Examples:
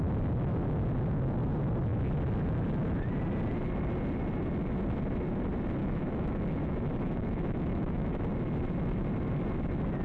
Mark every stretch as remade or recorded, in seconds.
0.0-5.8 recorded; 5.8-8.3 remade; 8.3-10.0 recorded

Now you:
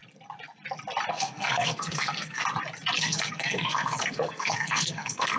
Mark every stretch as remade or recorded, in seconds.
0.0-1.1 recorded; 1.1-2.4 remade; 2.4-3.0 recorded; 3.0-5.4 remade

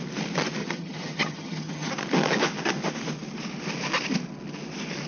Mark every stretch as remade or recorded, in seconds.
0.0-0.6 recorded; 0.6-1.9 remade; 1.9-5.1 recorded

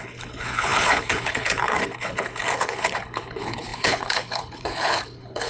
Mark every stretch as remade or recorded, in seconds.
0.0-5.5 remade

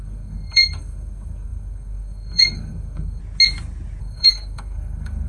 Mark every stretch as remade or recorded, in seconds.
0.0-3.2 remade; 3.2-4.0 recorded; 4.0-5.3 remade

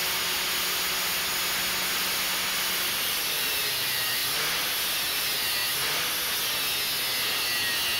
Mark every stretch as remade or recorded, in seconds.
0.0-2.9 recorded; 2.9-4.2 remade; 4.2-5.0 recorded; 5.0-5.6 remade; 5.6-8.0 recorded

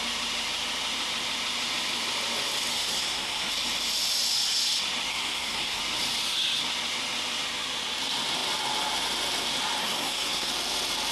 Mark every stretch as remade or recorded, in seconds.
0.0-2.7 recorded; 2.7-3.5 remade; 3.5-5.1 recorded; 5.1-5.8 remade; 5.8-9.8 recorded; 9.8-10.5 remade; 10.5-11.1 recorded

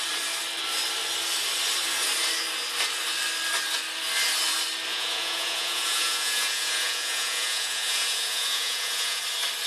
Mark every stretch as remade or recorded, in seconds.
0.0-4.9 recorded; 4.9-9.2 remade; 9.2-9.7 recorded